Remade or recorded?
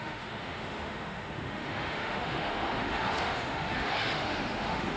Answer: remade